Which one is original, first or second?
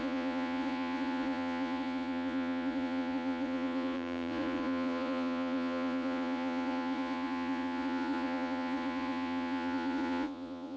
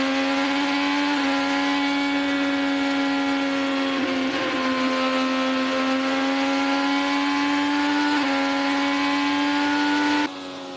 second